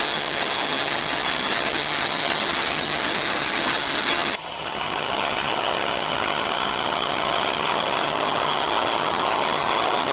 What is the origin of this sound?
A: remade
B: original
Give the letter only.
A